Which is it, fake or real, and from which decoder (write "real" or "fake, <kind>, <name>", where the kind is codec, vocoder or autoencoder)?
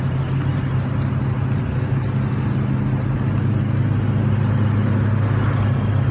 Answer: real